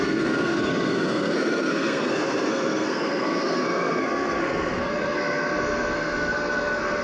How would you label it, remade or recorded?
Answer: remade